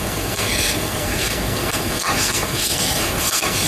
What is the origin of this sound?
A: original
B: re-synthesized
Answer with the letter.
B